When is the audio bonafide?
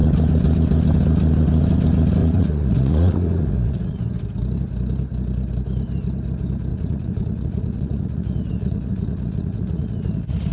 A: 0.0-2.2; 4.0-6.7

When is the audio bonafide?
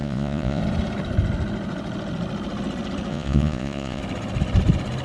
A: 0.6-3.1; 4.0-5.0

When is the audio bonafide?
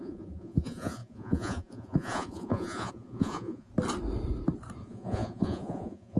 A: 3.7-4.8